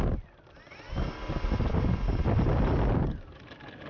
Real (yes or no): yes